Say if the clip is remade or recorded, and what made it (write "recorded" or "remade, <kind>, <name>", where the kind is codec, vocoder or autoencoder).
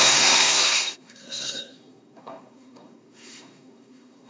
remade, codec, SNAC